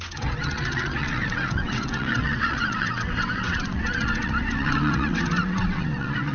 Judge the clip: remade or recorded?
remade